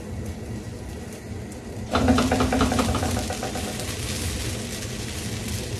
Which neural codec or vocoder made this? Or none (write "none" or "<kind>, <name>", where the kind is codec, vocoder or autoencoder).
none